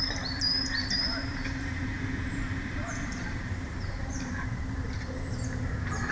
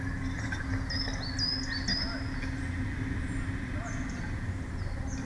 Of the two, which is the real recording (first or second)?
second